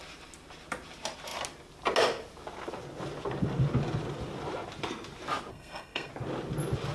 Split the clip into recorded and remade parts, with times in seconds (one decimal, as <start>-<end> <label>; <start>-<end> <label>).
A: 0.0-5.5 recorded; 5.5-6.1 remade; 6.1-6.9 recorded